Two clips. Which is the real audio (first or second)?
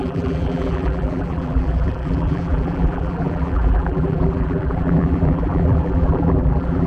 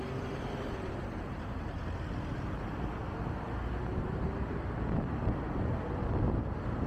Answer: second